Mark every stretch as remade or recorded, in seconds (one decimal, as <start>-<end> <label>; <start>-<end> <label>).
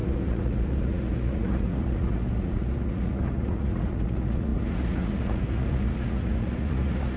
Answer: 0.0-7.2 remade